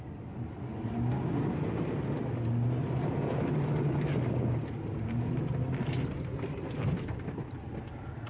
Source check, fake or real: real